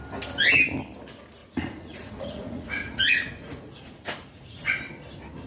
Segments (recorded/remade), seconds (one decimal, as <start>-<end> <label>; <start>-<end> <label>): 0.0-1.4 recorded; 1.4-4.7 remade; 4.7-5.5 recorded